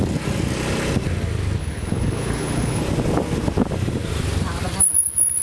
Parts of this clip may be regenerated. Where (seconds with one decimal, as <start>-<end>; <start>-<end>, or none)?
1.6-2.8